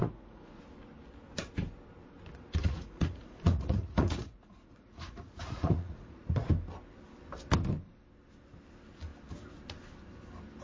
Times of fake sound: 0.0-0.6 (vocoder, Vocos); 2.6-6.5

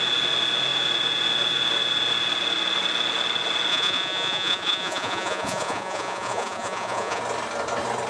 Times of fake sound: 3.7-7.2 (vocoder, Vocos)

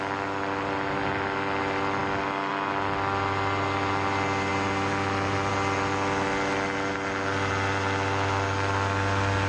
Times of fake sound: none

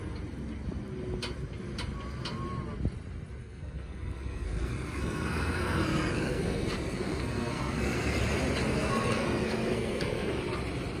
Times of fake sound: 3.4-8.2 (codec, SNAC); 8.7-10.4

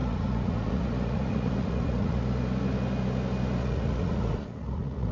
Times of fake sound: 0.0-2.2 (vocoder, Vocos); 3.6-5.1

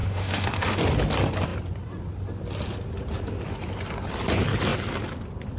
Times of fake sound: 0.0-0.8 (autoencoder, DAC-VAE)